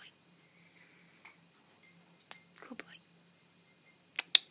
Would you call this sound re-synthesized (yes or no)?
no